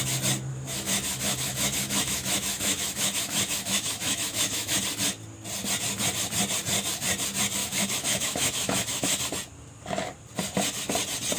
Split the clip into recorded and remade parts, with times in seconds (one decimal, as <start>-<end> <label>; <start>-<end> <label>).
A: 0.0-0.5 recorded; 0.5-4.8 remade; 4.8-7.6 recorded; 7.6-9.2 remade; 9.2-11.4 recorded